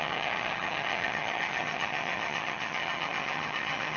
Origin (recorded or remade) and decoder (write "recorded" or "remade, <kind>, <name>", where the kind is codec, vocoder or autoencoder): remade, vocoder, HiFi-GAN